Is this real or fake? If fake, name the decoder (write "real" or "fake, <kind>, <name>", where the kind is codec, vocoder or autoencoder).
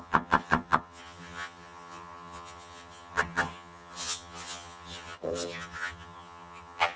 fake, vocoder, HiFi-GAN